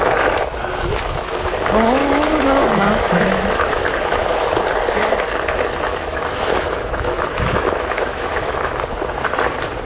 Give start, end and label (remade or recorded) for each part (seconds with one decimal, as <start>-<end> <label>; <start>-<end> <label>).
0.0-2.0 recorded; 2.0-4.6 remade; 4.6-5.9 recorded; 5.9-8.7 remade; 8.7-9.9 recorded